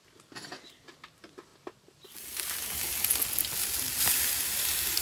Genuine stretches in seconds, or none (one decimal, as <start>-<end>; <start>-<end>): 0.0-5.0